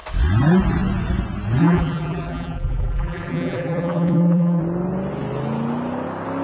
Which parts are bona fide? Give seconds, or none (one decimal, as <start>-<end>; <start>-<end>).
0.0-1.6; 4.6-6.4